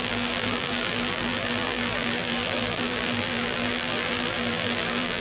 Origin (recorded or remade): remade